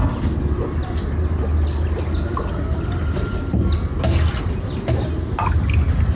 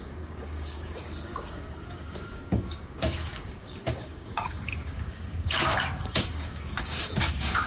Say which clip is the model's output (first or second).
second